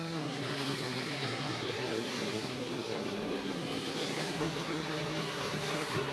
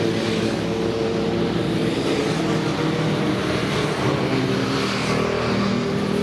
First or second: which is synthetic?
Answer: first